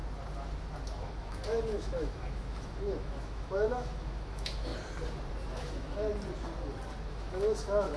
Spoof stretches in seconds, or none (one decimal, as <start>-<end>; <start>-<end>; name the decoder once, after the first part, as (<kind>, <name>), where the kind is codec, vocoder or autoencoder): 0.8-4.7 (autoencoder, DAC-VAE); 5.5-6.1; 7.1-8.0